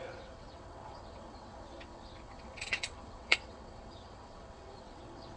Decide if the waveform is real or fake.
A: fake